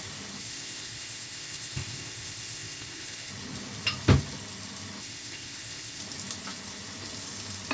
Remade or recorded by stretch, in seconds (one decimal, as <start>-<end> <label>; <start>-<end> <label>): 0.0-0.4 recorded; 0.4-3.3 remade; 3.3-5.0 recorded; 5.0-6.0 remade; 6.0-7.7 recorded